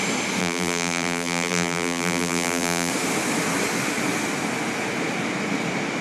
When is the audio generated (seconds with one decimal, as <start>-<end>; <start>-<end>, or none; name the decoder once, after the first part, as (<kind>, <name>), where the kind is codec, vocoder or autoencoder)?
0.4-2.9 (vocoder, BigVGAN v2)